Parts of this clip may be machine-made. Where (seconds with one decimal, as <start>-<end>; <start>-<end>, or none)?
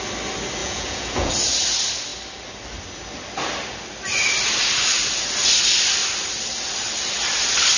0.6-1.3